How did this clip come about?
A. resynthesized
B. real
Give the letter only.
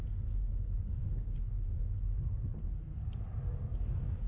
B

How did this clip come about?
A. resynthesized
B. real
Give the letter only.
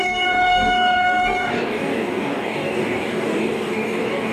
A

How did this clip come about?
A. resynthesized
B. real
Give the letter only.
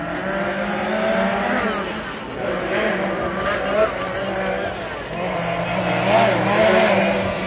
B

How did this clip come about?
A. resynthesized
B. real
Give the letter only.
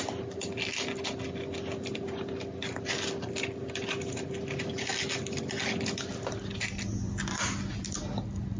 B